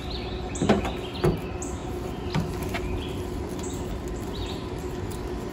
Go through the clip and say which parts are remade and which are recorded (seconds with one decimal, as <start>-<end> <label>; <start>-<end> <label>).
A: 0.0-5.5 recorded